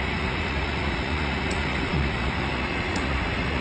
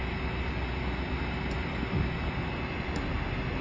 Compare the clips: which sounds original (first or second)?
second